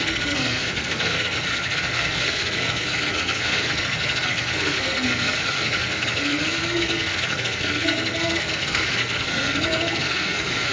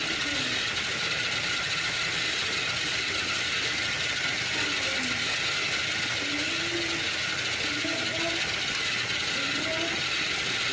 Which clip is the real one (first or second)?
second